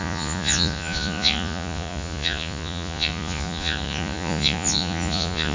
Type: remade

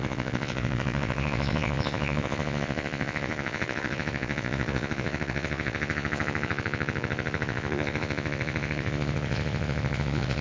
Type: remade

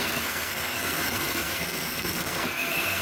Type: remade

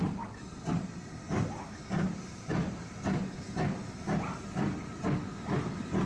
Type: recorded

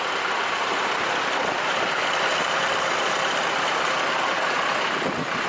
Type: recorded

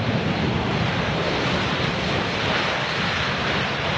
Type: remade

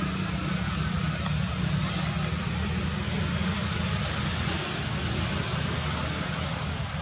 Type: recorded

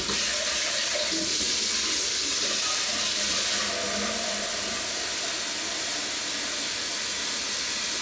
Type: recorded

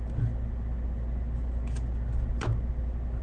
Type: recorded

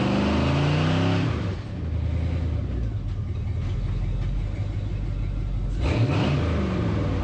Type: recorded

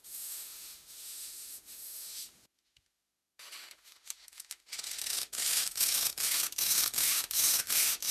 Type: remade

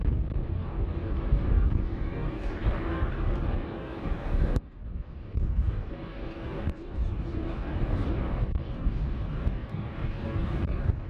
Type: remade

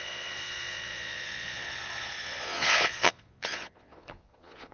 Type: remade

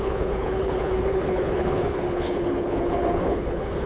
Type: remade